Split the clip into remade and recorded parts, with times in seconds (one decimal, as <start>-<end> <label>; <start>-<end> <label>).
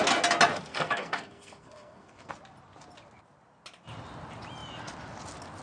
0.0-0.7 recorded; 0.7-2.3 remade; 2.3-5.6 recorded